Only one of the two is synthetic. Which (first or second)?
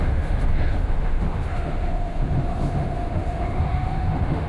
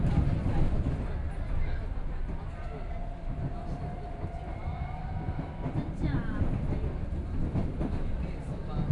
first